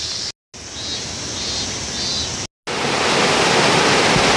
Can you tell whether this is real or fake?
real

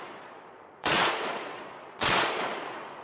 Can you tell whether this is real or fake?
fake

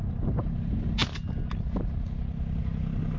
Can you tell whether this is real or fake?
real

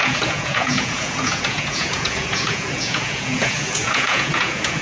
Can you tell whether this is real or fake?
fake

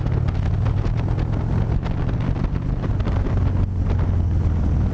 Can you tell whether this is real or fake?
real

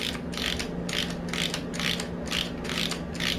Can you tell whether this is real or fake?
real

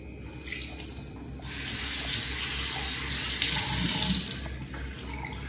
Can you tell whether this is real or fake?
real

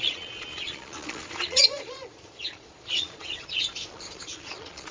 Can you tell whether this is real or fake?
fake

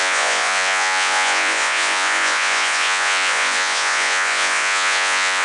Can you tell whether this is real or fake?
fake